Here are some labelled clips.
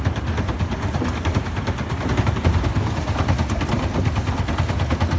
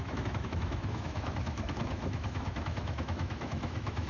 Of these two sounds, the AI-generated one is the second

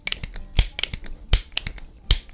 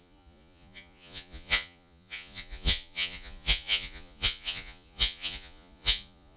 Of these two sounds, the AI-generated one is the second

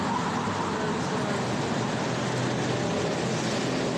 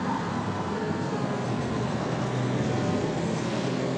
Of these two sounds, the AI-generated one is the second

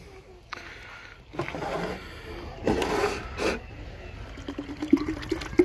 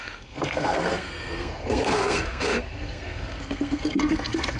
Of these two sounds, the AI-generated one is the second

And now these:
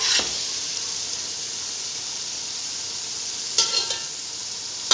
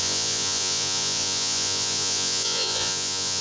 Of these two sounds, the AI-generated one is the second